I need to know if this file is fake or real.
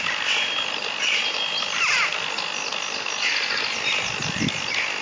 real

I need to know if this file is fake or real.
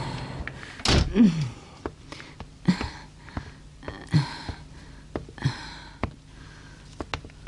real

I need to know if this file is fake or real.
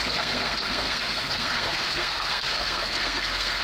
fake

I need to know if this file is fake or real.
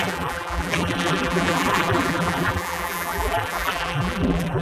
fake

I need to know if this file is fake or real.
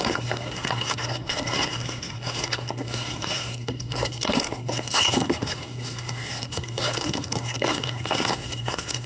fake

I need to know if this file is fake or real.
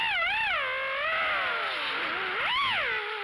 real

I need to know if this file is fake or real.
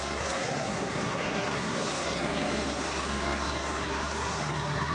fake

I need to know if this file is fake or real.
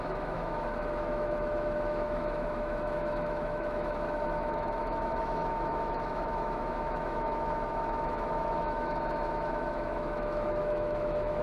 fake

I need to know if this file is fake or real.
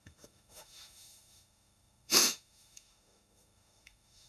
fake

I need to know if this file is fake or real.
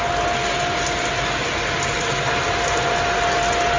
real